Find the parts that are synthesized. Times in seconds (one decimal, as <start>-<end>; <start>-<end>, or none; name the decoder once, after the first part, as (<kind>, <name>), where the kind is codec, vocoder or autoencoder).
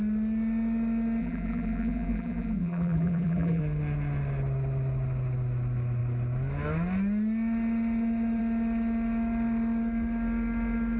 1.2-3.6 (vocoder, BigVGAN v2)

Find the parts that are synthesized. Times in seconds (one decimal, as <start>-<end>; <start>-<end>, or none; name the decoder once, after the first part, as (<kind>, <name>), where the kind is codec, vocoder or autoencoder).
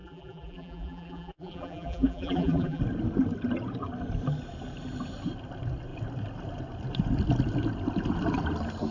0.0-2.8 (vocoder, BigVGAN v2)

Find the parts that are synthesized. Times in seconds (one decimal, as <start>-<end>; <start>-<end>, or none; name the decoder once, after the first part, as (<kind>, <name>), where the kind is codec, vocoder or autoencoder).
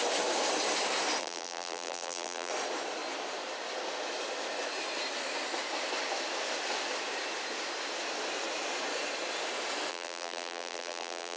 1.2-2.5 (vocoder, BigVGAN v2); 9.9-11.4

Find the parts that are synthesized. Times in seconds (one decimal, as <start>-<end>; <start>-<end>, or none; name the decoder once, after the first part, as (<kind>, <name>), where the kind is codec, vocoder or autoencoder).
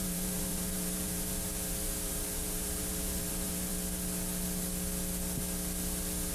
0.0-3.7 (vocoder, BigVGAN v2)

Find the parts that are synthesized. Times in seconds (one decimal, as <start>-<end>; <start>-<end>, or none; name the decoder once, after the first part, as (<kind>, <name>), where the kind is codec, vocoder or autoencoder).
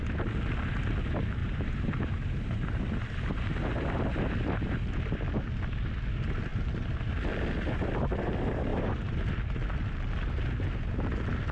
1.4-2.9 (vocoder, BigVGAN v2); 8.7-9.3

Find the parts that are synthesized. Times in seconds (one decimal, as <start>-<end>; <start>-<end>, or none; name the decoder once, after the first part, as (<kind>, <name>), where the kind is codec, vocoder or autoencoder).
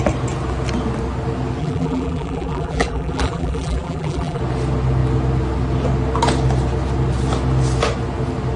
1.6-4.4 (vocoder, BigVGAN v2)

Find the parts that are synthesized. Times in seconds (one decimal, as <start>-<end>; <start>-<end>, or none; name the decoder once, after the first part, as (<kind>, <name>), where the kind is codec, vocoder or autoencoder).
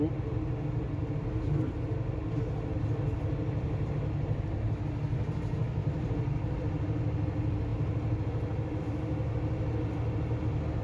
5.8-6.6 (vocoder, BigVGAN v2)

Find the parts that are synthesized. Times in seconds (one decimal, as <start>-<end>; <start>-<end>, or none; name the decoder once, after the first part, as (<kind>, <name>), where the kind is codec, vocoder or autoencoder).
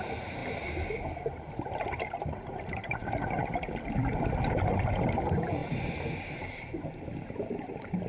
0.0-0.4 (vocoder, BigVGAN v2); 1.3-3.4; 4.4-8.1